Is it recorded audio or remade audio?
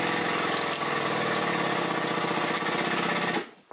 recorded